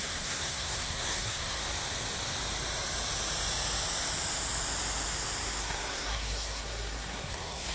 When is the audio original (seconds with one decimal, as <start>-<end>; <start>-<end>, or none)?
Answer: 1.6-5.6